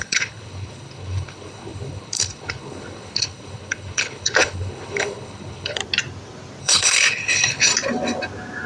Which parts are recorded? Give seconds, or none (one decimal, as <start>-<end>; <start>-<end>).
5.8-6.6; 7.7-8.7